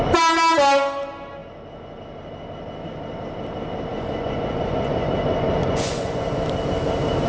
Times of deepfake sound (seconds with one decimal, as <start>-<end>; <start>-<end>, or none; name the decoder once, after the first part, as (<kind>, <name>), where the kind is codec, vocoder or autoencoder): 3.9-5.1 (vocoder, Vocos); 5.6-6.4